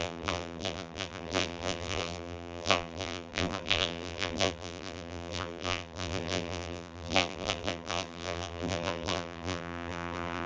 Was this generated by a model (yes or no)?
yes